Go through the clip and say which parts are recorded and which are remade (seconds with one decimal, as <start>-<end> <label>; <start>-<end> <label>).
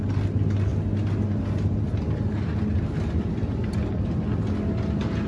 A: 0.0-5.3 recorded